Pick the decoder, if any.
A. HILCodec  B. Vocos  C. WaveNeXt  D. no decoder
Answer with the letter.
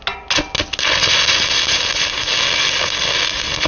D